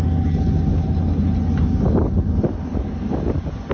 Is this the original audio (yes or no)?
yes